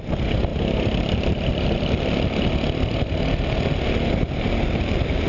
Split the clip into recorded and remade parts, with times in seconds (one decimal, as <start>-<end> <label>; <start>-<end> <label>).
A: 0.0-0.5 recorded; 0.5-3.0 remade; 3.0-5.3 recorded